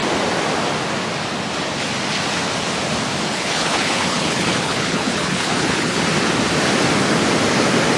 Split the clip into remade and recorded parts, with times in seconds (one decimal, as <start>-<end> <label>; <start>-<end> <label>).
0.0-3.3 recorded; 3.3-6.0 remade; 6.0-8.0 recorded